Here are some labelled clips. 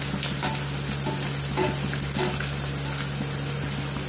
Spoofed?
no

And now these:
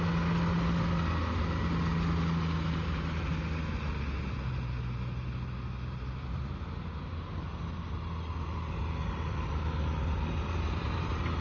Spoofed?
no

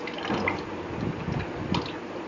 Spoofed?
no